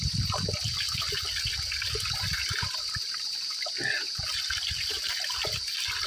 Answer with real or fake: real